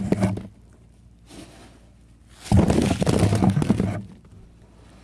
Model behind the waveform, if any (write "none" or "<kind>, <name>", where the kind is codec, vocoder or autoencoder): none